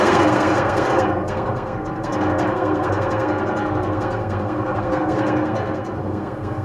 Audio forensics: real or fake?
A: fake